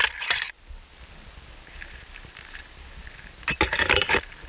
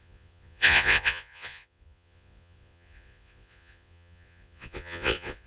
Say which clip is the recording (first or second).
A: first